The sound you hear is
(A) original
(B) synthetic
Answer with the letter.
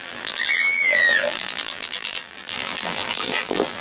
B